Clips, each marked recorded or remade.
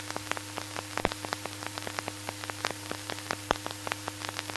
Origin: remade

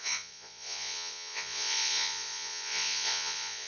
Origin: remade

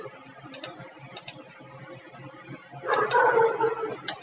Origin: remade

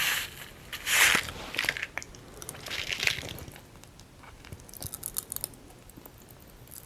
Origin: recorded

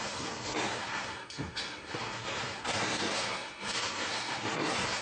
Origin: remade